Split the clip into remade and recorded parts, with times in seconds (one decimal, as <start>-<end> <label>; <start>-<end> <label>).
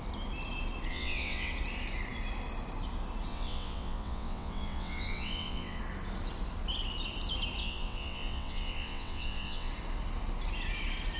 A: 0.0-0.9 recorded; 0.9-1.5 remade; 1.5-3.3 recorded; 3.3-5.8 remade; 5.8-7.6 recorded; 7.6-9.7 remade; 9.7-11.2 recorded